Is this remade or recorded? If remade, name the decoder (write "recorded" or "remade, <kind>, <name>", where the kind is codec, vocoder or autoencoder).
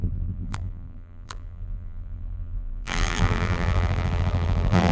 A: remade, vocoder, BigVGAN v2